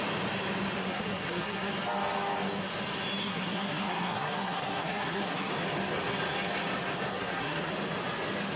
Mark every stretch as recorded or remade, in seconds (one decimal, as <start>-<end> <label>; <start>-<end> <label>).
0.0-0.8 recorded; 0.8-1.7 remade; 1.7-3.2 recorded; 3.2-5.5 remade; 5.5-7.1 recorded; 7.1-7.7 remade; 7.7-8.6 recorded